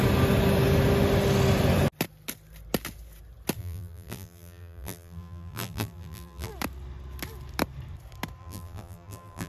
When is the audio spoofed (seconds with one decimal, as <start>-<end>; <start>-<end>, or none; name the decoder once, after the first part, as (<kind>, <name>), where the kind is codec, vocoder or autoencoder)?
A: 3.6-6.5 (vocoder, BigVGAN v2); 8.4-9.5